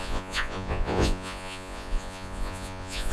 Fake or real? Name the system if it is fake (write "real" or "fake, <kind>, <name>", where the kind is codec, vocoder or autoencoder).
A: fake, vocoder, Vocos